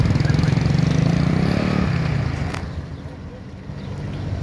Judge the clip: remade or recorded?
recorded